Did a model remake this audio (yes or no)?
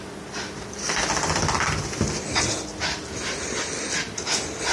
no